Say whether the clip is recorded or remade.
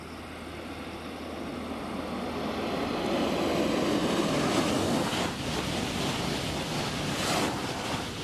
recorded